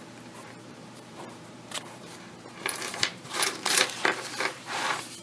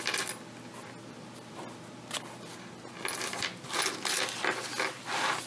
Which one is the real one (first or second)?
second